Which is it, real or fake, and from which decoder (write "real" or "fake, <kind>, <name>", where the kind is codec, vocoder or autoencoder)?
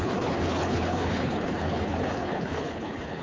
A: fake, codec, HILCodec